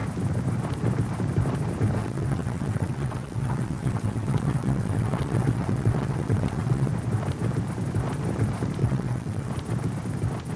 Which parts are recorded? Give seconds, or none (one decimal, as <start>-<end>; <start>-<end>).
0.0-2.0; 6.9-8.8; 9.5-10.6